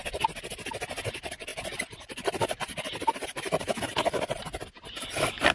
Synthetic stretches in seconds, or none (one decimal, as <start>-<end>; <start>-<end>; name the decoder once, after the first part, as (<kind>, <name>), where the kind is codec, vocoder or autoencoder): 1.5-3.8 (vocoder, BigVGAN v2)